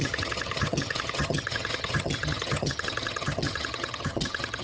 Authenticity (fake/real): fake